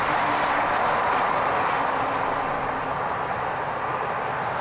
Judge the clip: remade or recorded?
recorded